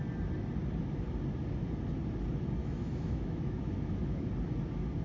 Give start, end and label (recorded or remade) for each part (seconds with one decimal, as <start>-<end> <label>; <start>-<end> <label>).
0.0-2.6 recorded; 2.6-4.3 remade; 4.3-5.0 recorded